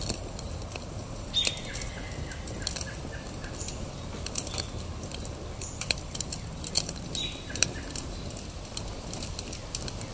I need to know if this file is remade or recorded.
recorded